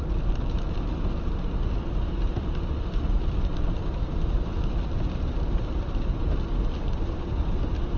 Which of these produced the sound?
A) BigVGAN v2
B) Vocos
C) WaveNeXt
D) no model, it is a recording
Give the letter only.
D